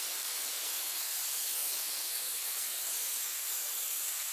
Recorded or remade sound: remade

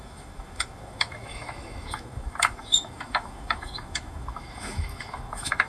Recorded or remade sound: remade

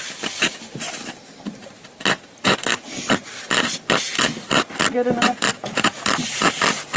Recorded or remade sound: recorded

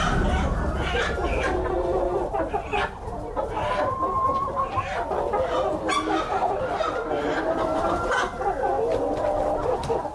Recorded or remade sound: recorded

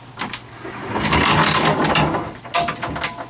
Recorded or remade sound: recorded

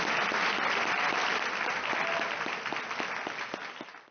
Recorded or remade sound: recorded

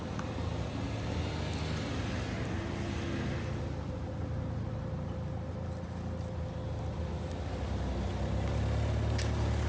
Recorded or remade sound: recorded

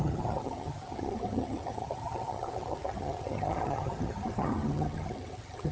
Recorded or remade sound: remade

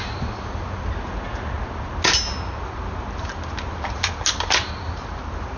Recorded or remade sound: recorded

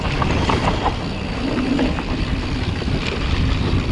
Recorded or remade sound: remade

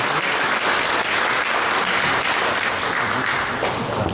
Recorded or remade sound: recorded